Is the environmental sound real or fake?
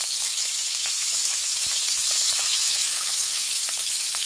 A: fake